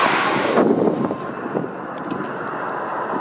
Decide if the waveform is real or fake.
real